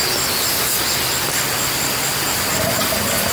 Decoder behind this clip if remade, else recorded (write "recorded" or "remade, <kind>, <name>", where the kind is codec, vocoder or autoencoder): recorded